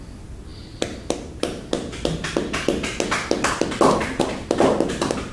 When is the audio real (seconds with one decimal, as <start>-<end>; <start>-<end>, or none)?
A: 0.0-5.3